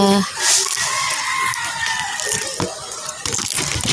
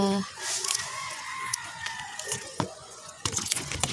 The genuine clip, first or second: first